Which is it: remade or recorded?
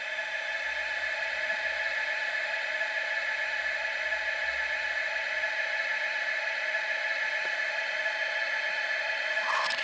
recorded